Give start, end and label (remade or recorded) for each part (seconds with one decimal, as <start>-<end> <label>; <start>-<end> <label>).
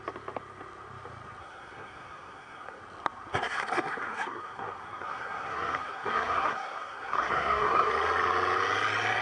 0.0-1.4 recorded; 1.4-2.8 remade; 2.8-3.3 recorded; 3.3-7.9 remade; 7.9-9.2 recorded